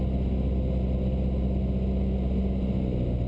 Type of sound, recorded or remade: recorded